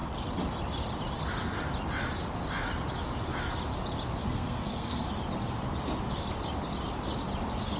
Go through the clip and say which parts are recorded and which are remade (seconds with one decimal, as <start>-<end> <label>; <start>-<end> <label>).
0.0-4.2 recorded; 4.2-5.1 remade; 5.1-7.8 recorded